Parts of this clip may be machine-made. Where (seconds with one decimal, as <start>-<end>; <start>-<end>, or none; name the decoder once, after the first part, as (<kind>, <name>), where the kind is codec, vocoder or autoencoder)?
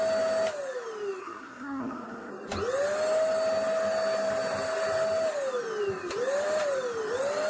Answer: 1.2-2.3 (codec, SNAC)